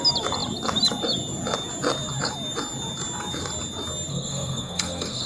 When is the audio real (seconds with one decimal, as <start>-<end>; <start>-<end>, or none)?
0.0-4.1